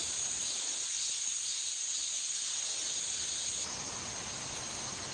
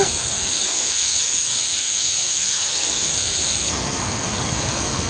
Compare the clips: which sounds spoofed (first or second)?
second